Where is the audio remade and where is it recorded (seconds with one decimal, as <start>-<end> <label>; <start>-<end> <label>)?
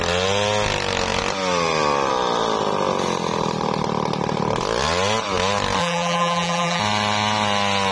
0.0-5.8 recorded; 5.8-6.8 remade; 6.8-7.9 recorded